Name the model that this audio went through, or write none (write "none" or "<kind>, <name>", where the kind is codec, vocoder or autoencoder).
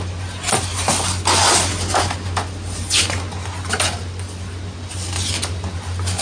none